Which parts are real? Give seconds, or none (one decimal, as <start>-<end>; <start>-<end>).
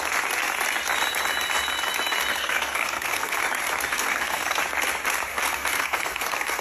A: 0.0-2.3; 3.4-3.9; 4.6-5.3